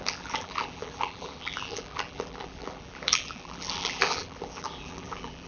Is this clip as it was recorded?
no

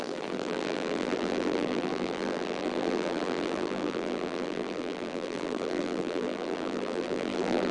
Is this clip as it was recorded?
no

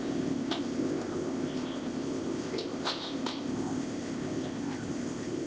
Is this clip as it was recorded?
no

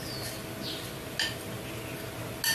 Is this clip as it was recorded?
yes